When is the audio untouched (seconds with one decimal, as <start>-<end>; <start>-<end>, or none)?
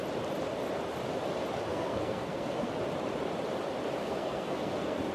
0.0-1.7; 2.7-4.0